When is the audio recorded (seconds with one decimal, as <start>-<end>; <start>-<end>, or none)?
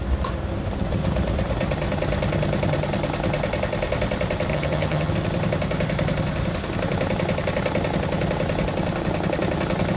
0.0-4.5; 5.1-10.0